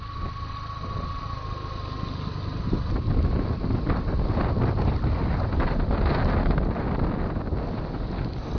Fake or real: real